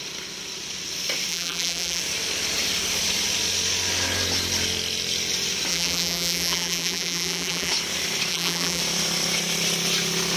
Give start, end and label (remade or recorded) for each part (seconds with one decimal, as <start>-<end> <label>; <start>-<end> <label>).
0.0-1.3 recorded; 1.3-2.0 remade; 2.0-5.7 recorded; 5.7-7.7 remade; 7.7-8.3 recorded; 8.3-8.8 remade; 8.8-10.4 recorded